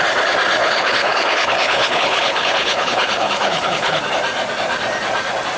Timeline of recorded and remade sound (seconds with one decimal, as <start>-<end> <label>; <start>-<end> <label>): 0.0-0.6 recorded; 0.6-4.0 remade; 4.0-5.6 recorded